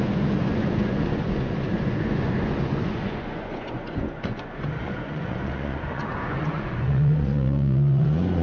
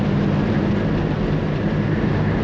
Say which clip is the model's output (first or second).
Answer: first